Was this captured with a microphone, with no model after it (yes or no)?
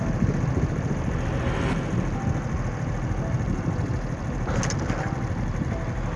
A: yes